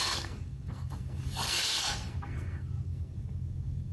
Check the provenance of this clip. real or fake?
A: fake